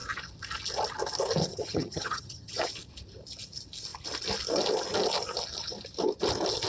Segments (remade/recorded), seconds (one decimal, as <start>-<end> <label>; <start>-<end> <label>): 0.0-1.5 recorded; 1.5-2.7 remade; 2.7-6.7 recorded